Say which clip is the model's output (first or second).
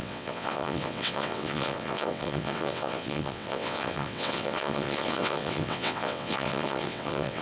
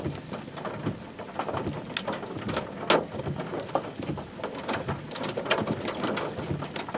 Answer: first